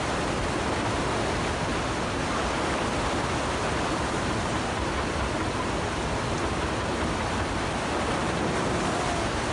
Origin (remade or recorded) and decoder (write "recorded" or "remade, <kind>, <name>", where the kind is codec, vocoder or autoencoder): recorded